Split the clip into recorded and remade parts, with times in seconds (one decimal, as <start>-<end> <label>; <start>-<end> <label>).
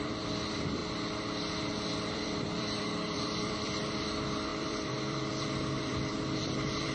0.0-0.8 remade; 0.8-2.1 recorded; 2.1-6.9 remade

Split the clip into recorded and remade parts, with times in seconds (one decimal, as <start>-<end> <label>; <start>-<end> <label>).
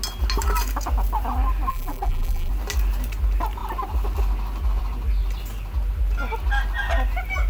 0.0-1.7 recorded; 1.7-2.5 remade; 2.5-7.5 recorded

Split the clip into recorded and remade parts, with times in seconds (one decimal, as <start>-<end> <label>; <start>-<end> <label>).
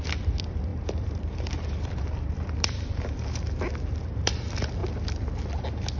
0.0-0.7 recorded; 0.7-4.3 remade; 4.3-6.0 recorded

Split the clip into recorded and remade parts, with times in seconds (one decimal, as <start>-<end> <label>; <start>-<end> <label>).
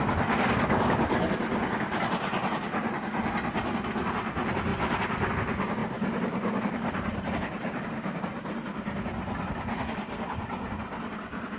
0.0-4.7 recorded; 4.7-5.3 remade; 5.3-5.8 recorded; 5.8-7.3 remade; 7.3-11.6 recorded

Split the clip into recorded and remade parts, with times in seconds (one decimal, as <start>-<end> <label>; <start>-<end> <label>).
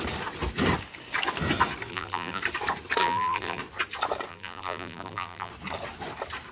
0.0-1.9 recorded; 1.9-2.4 remade; 2.4-3.0 recorded; 3.0-3.6 remade; 3.6-4.3 recorded; 4.3-5.5 remade; 5.5-6.5 recorded